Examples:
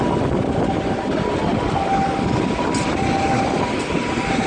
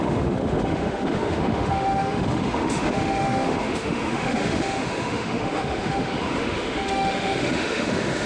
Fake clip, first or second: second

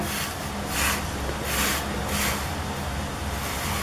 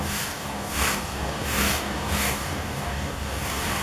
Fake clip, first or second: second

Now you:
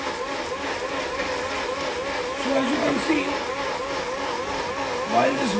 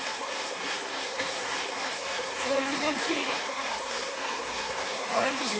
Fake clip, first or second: second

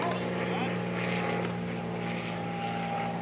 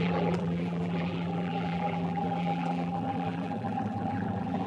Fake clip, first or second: second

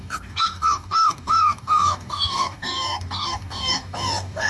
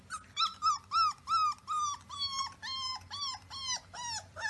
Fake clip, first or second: first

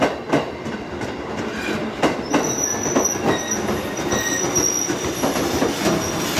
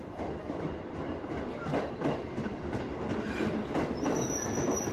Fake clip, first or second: second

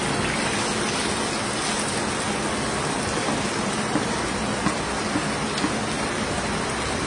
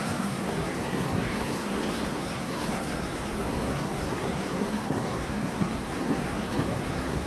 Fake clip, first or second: second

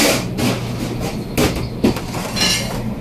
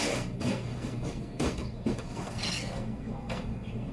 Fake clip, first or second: second